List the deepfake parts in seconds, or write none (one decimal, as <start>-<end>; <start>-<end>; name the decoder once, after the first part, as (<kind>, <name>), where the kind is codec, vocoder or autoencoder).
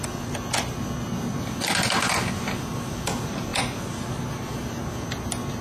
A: none